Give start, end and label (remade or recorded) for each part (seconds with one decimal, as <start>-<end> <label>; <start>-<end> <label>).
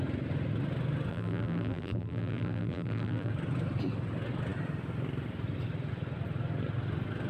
0.0-1.1 recorded; 1.1-3.3 remade; 3.3-7.3 recorded